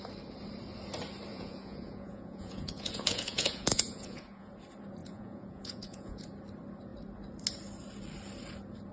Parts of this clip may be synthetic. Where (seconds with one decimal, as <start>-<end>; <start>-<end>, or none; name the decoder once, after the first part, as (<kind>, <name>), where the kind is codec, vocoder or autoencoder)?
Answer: 1.3-4.5 (vocoder, Vocos); 5.0-6.2